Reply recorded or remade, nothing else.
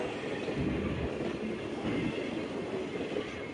recorded